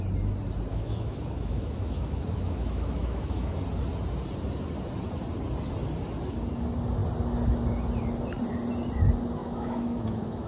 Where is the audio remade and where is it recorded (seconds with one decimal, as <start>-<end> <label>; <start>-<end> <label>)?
0.0-0.7 recorded; 0.7-3.5 remade; 3.5-9.4 recorded; 9.4-10.5 remade